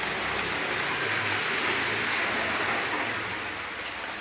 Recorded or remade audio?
recorded